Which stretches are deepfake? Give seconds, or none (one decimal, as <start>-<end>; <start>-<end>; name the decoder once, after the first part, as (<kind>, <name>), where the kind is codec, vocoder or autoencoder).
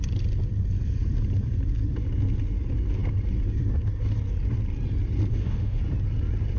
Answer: 5.3-5.8 (autoencoder, DAC-VAE)